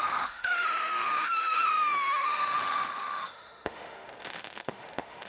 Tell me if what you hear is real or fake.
fake